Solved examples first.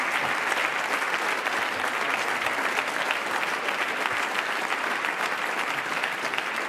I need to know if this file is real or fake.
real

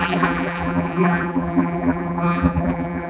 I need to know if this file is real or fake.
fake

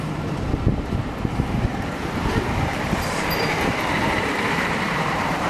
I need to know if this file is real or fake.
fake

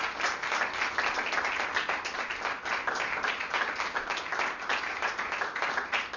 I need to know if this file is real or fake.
real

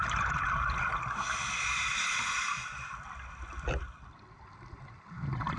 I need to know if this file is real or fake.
real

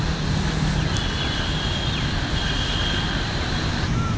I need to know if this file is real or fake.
real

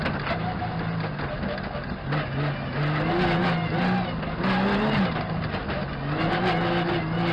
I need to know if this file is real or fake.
real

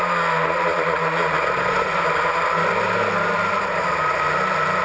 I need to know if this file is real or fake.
real